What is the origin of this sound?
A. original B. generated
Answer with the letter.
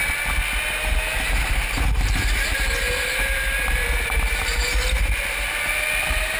A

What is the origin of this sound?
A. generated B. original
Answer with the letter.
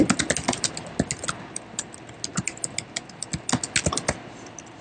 B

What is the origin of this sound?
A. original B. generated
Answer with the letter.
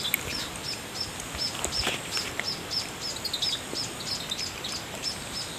A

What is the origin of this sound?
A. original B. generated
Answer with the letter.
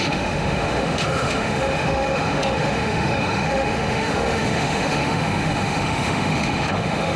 B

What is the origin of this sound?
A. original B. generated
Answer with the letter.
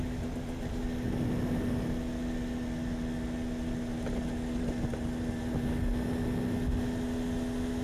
A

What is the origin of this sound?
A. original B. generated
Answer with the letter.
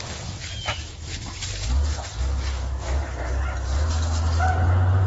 A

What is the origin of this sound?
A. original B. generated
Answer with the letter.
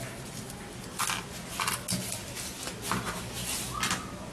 A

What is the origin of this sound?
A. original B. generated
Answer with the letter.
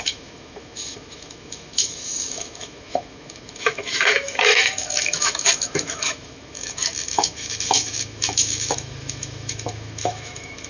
B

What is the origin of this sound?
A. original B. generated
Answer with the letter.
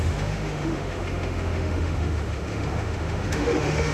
B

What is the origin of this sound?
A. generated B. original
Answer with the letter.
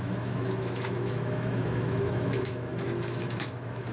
A